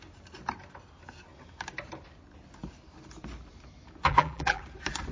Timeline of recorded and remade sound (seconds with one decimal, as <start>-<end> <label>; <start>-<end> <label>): 0.0-4.1 recorded; 4.1-4.6 remade; 4.6-5.1 recorded